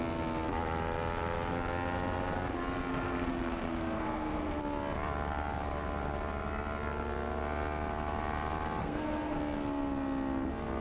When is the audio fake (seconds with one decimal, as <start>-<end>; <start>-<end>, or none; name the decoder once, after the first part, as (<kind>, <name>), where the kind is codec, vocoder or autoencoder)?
2.9-4.6 (codec, SNAC); 8.8-9.4